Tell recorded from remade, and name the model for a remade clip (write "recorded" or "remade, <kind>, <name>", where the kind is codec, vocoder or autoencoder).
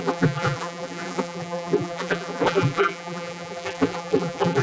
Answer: remade, vocoder, BigVGAN v2